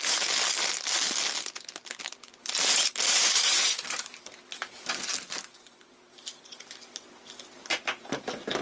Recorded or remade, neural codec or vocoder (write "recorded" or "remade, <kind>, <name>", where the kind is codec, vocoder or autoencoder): recorded